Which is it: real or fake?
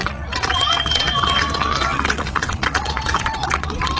fake